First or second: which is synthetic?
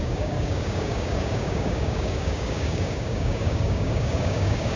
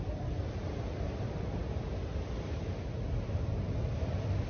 first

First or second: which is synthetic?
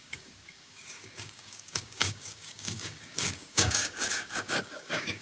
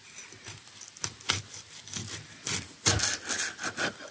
first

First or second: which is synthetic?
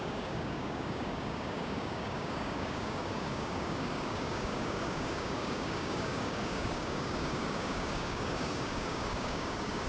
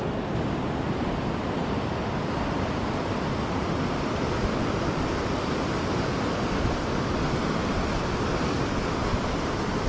first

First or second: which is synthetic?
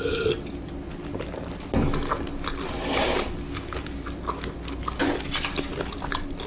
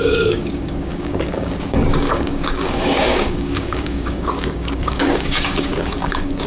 second